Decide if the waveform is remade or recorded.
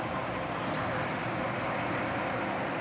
recorded